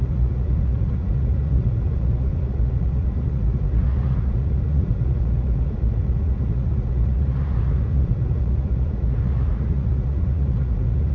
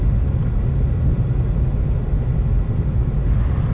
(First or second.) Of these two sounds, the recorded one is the second